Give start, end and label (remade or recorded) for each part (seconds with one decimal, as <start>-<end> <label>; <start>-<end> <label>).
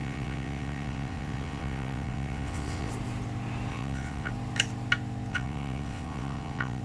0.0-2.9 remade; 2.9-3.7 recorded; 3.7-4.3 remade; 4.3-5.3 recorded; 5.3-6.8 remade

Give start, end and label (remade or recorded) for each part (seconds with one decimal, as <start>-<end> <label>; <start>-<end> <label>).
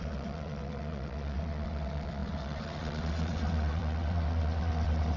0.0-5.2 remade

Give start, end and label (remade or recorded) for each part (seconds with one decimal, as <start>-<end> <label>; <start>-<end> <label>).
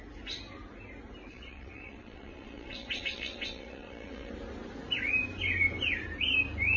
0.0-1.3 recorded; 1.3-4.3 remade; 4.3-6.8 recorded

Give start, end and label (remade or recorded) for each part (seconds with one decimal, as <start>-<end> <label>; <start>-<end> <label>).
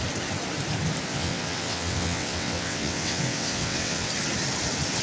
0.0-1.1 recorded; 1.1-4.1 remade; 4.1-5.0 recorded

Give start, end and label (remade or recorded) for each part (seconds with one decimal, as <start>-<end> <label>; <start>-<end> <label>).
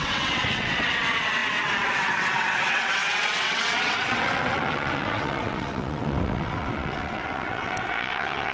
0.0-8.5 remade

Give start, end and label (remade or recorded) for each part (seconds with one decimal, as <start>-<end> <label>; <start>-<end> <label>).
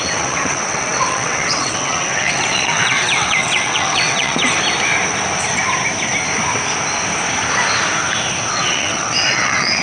0.0-4.4 remade; 4.4-8.5 recorded; 8.5-9.8 remade